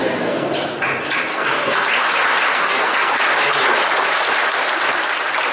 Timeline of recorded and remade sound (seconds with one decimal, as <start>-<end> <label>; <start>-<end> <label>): 0.0-0.5 remade; 0.5-1.3 recorded; 1.3-1.9 remade; 1.9-2.5 recorded; 2.5-3.2 remade; 3.2-5.5 recorded